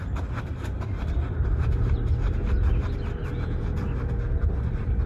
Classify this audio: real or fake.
fake